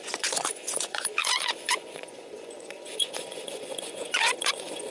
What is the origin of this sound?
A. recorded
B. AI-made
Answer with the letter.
B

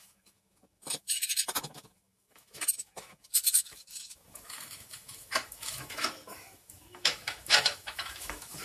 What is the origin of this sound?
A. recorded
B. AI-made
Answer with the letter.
B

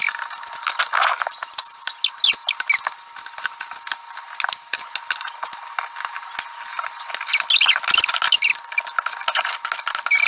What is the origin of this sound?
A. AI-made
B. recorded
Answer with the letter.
B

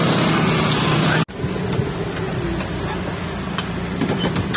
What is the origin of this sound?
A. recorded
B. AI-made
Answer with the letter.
A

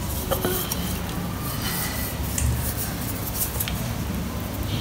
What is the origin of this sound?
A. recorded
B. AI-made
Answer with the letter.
A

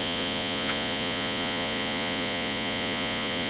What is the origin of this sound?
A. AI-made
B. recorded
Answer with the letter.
A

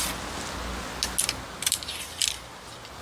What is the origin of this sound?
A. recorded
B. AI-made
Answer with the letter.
A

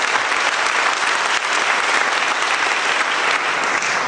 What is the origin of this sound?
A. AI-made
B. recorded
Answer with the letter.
B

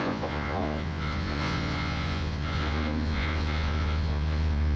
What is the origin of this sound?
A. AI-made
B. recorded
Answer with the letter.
A